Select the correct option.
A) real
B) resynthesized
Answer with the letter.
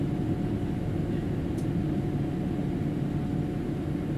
A